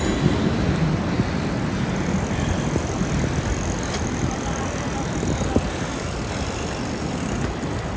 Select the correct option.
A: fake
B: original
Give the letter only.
B